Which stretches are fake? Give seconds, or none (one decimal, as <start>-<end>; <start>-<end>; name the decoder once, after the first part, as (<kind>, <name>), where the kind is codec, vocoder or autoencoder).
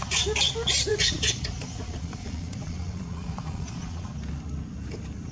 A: 0.9-4.1 (vocoder, Vocos)